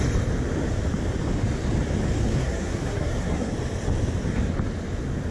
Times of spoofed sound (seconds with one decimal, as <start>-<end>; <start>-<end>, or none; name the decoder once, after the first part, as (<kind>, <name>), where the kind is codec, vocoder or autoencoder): 2.2-3.5 (codec, SNAC)